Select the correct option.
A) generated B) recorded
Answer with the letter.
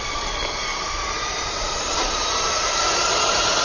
B